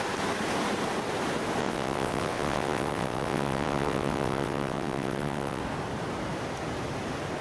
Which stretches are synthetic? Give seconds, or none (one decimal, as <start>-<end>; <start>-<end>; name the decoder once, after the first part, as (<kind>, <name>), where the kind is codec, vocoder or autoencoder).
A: 1.6-5.6 (vocoder, WaveNeXt)